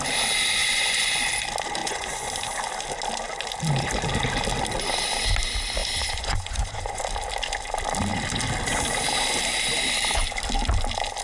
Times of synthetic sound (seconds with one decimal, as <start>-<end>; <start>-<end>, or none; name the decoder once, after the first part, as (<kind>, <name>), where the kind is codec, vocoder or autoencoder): 0.6-1.3 (vocoder, Vocos); 1.8-2.3; 5.8-7.0